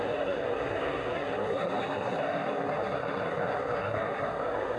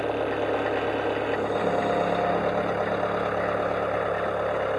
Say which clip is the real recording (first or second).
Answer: second